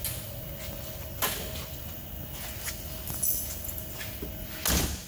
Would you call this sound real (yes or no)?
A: yes